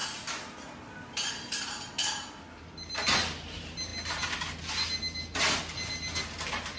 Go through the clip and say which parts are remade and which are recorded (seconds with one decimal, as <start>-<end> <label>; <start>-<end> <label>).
0.0-6.8 recorded